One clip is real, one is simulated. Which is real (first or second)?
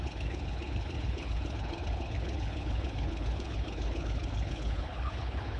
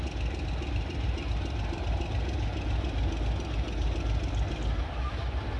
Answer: second